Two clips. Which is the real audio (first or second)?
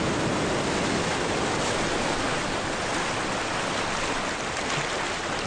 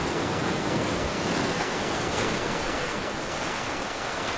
first